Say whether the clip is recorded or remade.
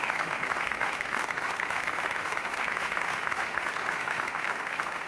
remade